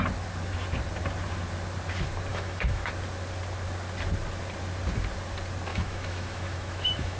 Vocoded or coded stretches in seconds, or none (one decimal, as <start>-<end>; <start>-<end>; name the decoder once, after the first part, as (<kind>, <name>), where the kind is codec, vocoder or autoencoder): 2.3-2.9 (autoencoder, DAC-VAE); 5.7-7.2